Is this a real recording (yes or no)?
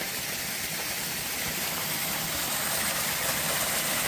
yes